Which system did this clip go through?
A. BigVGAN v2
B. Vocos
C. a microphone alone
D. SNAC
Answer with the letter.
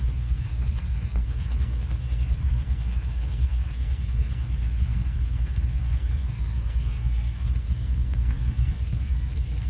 D